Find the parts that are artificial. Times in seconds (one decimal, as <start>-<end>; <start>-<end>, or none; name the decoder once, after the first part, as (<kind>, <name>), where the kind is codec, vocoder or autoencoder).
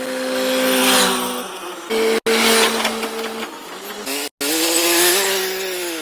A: none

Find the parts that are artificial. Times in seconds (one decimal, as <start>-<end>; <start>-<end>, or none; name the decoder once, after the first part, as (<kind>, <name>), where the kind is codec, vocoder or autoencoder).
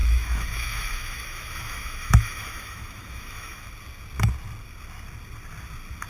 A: 0.0-3.7 (autoencoder, DAC-VAE)